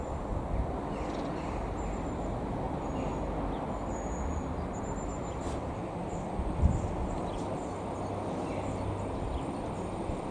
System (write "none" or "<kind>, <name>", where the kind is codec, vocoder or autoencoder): none